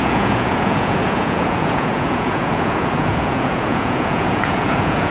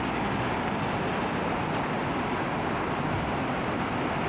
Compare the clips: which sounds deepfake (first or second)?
first